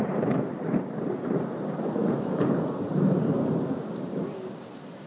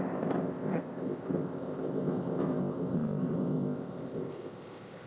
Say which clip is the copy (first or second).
second